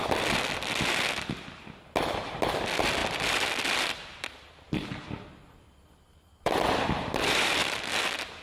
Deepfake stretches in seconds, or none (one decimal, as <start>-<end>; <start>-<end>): 3.0-8.0